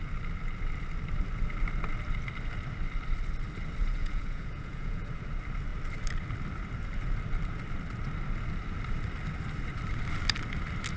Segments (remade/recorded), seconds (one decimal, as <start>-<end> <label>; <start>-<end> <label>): 0.0-3.8 recorded; 3.8-5.1 remade; 5.1-11.0 recorded